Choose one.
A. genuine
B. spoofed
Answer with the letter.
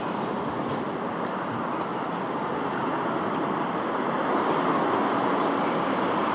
A